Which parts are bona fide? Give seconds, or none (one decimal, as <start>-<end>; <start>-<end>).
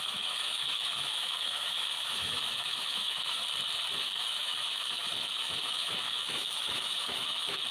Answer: 3.4-4.0